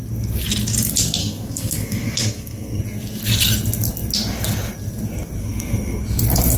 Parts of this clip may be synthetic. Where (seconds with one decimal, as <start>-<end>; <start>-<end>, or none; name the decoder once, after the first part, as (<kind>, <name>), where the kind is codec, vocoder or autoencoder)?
1.2-2.8 (codec, SNAC); 5.4-6.0